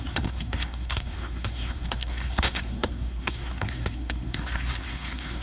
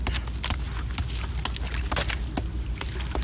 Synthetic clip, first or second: first